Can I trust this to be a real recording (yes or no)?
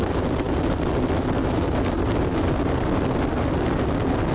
yes